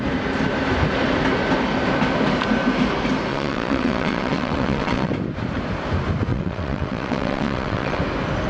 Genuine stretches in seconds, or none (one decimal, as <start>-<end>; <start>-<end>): 0.0-3.3; 5.1-6.3; 8.0-8.5